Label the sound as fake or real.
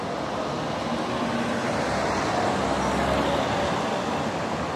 real